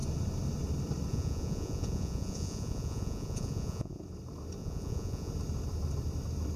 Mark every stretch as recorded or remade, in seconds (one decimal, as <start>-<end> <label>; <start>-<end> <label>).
0.0-1.1 recorded; 1.1-4.0 remade; 4.0-4.6 recorded; 4.6-5.3 remade; 5.3-6.6 recorded